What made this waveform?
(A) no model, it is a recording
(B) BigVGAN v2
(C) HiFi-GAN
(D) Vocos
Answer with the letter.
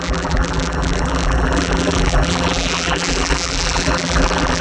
B